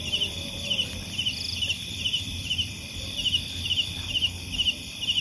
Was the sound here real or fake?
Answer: fake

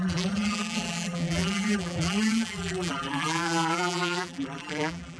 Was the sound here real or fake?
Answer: fake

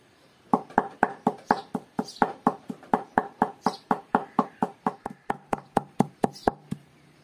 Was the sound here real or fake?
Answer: fake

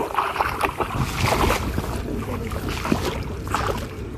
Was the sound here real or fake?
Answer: real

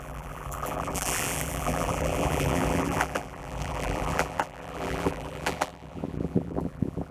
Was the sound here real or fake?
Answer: fake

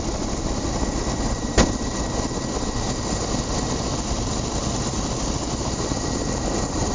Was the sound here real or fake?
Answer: fake